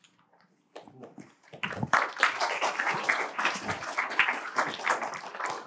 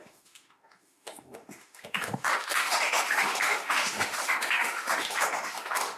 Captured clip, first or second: first